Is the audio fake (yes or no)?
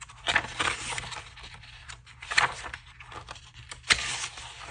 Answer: no